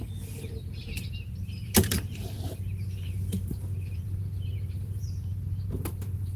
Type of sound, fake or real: fake